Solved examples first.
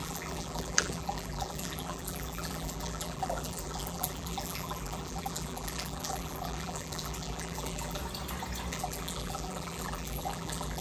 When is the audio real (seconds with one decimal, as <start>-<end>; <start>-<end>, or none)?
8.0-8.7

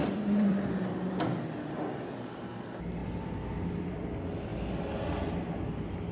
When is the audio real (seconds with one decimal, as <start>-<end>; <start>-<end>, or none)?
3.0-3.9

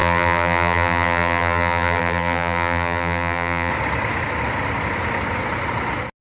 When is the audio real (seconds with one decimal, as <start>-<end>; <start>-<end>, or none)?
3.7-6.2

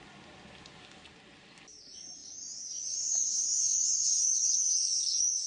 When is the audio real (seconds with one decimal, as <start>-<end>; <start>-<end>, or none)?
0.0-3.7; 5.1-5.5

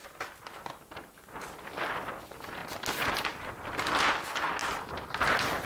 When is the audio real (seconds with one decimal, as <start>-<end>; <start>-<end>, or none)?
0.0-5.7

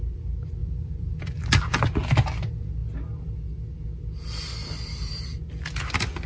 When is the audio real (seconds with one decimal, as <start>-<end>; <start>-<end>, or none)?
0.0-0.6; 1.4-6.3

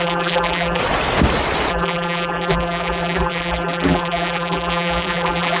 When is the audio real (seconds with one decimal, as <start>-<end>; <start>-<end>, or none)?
0.8-1.7